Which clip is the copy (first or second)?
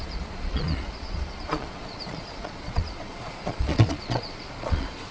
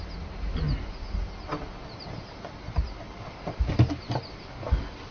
first